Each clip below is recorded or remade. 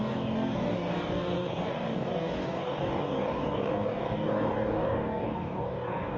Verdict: remade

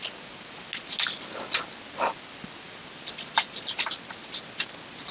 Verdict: recorded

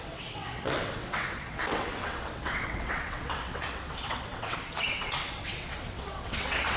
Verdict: remade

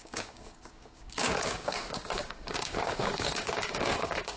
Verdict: remade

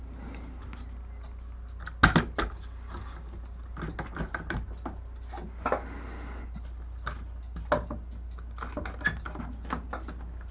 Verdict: recorded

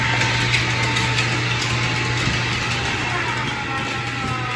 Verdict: recorded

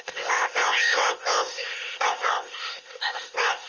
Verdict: remade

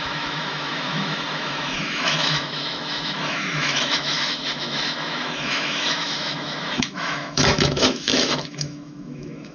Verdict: remade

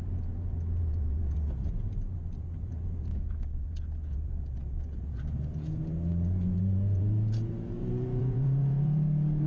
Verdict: remade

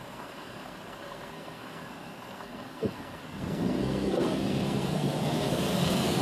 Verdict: remade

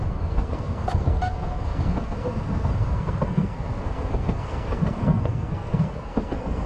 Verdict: remade